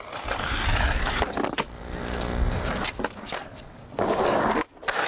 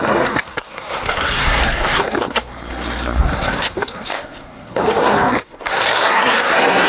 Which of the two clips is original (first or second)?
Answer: first